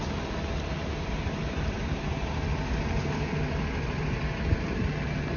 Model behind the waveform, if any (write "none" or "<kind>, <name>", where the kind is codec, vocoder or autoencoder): none